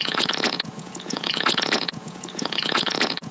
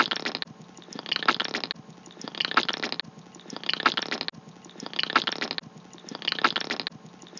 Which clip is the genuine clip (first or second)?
second